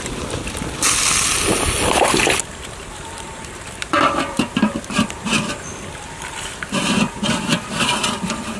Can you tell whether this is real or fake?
fake